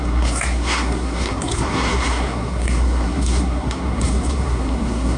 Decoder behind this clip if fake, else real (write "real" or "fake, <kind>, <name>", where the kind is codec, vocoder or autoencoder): fake, codec, SNAC